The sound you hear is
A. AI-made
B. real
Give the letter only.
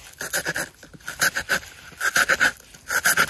B